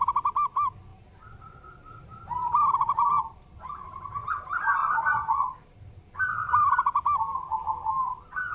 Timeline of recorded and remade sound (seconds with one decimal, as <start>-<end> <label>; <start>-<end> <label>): 0.0-4.8 recorded; 4.8-5.4 remade; 5.4-8.5 recorded